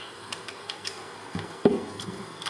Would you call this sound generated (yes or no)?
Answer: yes